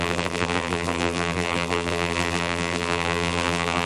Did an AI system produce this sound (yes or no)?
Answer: yes